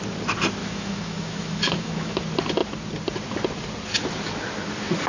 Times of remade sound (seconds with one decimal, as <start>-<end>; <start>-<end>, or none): 0.6-2.2